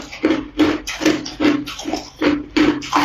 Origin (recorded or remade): recorded